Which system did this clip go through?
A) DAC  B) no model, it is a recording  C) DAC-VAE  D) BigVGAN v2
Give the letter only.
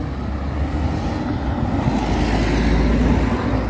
B